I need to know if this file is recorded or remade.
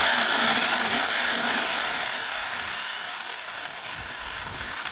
remade